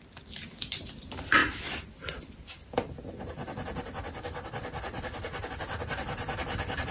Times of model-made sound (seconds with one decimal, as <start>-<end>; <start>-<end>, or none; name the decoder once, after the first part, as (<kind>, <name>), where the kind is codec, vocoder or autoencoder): none